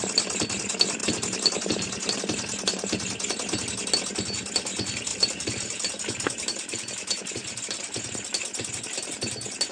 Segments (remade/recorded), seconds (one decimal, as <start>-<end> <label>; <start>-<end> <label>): 0.0-5.1 recorded; 5.1-7.6 remade; 7.6-9.7 recorded